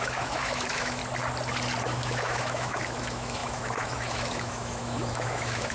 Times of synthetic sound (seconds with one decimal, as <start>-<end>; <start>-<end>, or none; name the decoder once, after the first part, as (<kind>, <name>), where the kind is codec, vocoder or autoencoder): 0.0-1.0 (autoencoder, DAC-VAE); 1.8-5.7

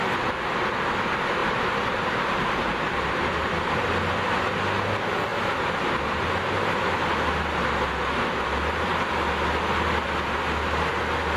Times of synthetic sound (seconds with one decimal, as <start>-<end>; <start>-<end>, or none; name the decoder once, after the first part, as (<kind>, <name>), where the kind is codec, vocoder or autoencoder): 1.4-3.5 (vocoder, BigVGAN v2)